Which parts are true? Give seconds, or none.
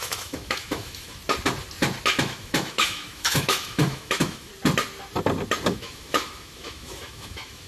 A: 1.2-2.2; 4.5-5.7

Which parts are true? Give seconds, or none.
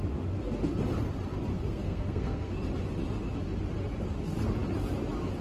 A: 0.0-1.5; 2.5-5.4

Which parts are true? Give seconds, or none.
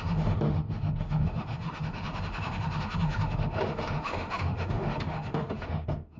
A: none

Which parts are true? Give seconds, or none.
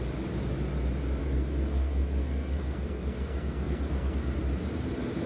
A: 0.0-1.2; 4.4-5.3